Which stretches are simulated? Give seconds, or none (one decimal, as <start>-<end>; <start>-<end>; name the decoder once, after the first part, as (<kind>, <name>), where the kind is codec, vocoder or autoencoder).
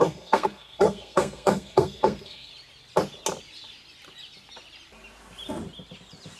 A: 0.0-2.5 (codec, SNAC)